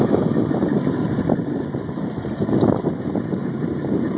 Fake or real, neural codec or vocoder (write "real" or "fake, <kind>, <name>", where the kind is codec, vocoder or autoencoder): real